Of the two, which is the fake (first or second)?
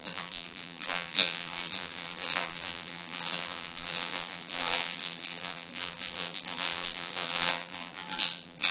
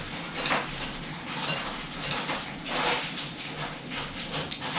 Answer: first